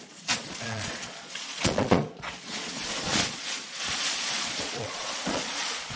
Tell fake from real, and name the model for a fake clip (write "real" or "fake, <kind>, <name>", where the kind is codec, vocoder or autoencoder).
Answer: fake, vocoder, Vocos